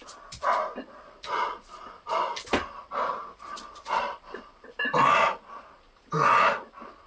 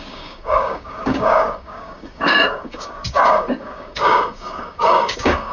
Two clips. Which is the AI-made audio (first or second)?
second